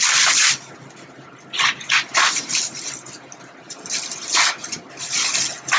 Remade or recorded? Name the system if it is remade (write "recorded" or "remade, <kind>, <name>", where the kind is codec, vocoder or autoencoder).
recorded